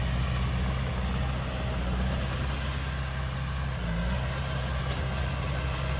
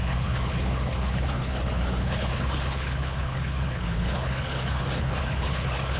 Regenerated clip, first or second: second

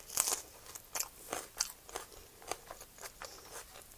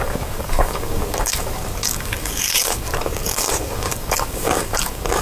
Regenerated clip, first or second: second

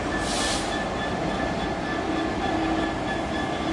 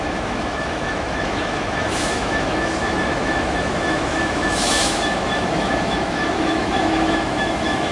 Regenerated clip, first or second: second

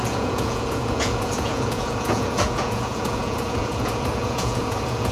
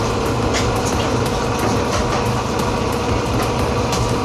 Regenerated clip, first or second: first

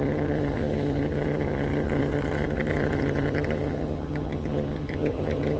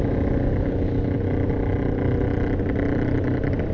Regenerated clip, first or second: first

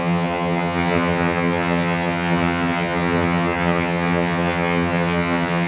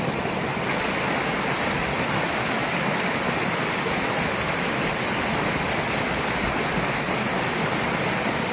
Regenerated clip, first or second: first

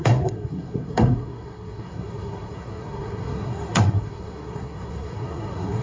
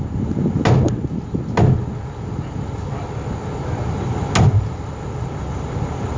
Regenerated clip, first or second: first